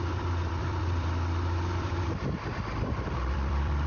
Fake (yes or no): yes